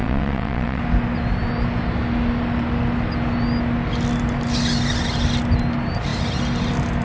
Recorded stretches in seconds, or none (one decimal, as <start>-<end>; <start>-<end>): 0.8-7.0

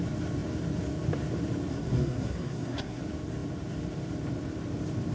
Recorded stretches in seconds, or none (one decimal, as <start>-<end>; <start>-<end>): 0.0-1.7; 3.0-5.1

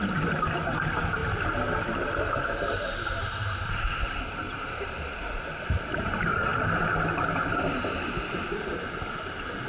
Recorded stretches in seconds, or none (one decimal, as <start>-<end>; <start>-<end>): 0.0-4.4; 5.2-9.7

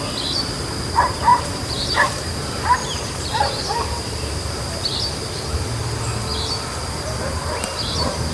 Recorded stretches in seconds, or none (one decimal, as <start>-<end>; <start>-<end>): 0.0-1.3; 4.6-8.3